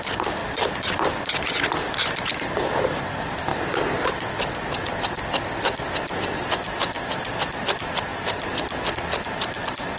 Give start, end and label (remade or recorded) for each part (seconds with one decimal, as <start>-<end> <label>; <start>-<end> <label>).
0.0-3.5 remade; 3.5-6.1 recorded; 6.1-8.1 remade; 8.1-8.9 recorded; 8.9-10.0 remade